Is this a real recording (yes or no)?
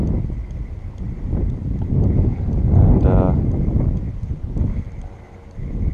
yes